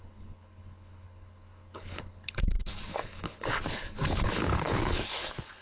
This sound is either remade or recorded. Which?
remade